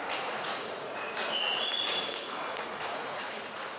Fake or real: fake